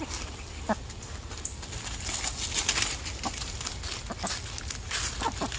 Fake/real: real